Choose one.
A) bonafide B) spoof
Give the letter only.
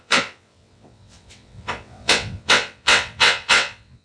B